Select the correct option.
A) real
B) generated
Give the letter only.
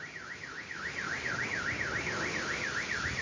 A